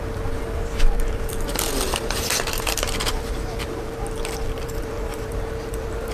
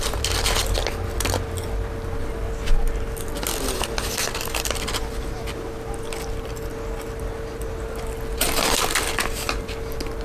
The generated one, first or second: first